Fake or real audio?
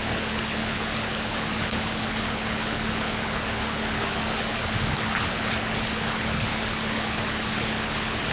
fake